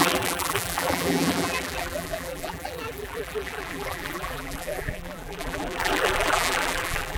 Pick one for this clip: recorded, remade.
remade